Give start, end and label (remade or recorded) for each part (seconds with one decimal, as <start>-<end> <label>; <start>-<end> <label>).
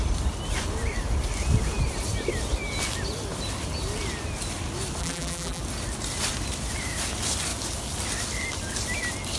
0.0-5.0 recorded; 5.0-5.6 remade; 5.6-9.4 recorded